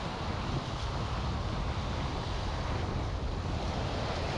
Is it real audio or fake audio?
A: real